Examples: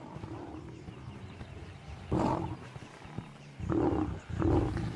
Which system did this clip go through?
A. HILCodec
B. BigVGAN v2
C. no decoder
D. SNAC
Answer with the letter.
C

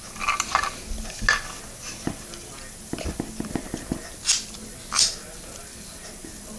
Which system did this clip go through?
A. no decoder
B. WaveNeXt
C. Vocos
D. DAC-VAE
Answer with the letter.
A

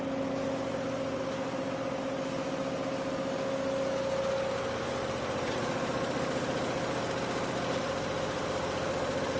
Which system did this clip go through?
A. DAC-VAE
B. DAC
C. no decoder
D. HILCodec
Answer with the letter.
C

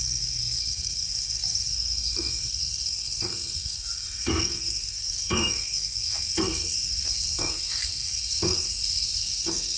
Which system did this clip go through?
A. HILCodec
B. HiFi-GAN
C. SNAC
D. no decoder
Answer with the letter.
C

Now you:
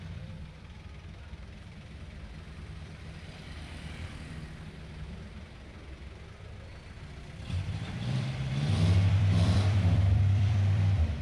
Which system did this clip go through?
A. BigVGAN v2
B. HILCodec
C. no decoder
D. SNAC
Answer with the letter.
A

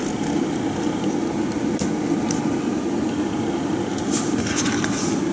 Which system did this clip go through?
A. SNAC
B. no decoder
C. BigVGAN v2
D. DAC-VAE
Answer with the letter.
B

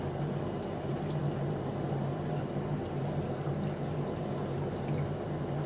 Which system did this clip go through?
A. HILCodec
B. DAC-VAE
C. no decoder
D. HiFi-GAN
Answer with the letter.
C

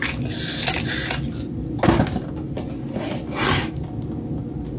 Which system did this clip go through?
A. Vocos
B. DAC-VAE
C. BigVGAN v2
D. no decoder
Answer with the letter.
D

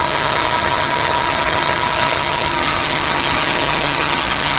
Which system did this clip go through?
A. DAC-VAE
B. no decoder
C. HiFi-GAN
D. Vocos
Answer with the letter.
C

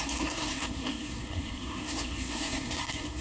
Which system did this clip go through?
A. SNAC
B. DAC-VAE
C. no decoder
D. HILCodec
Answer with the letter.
A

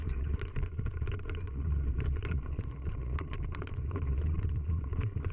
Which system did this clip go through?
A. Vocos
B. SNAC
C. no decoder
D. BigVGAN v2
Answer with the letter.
A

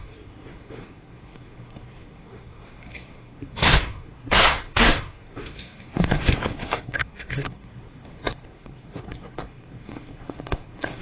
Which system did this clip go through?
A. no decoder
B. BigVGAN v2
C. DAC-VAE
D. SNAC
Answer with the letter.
D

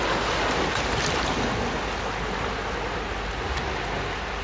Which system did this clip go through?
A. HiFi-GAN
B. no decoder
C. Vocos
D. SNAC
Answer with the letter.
B